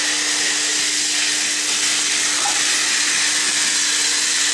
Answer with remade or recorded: recorded